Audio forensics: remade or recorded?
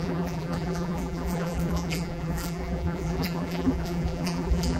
remade